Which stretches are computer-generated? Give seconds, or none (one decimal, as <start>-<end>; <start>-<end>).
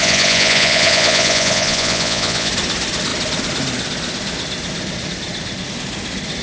0.0-2.5